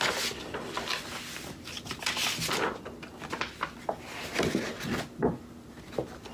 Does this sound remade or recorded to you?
recorded